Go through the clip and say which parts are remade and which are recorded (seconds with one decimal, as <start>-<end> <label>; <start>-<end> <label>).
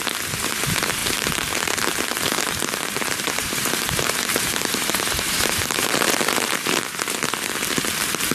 0.0-1.0 recorded; 1.0-1.6 remade; 1.6-2.3 recorded; 2.3-7.0 remade; 7.0-8.3 recorded